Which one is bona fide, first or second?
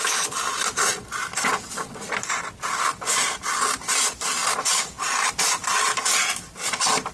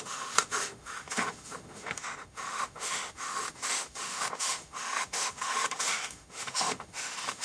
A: first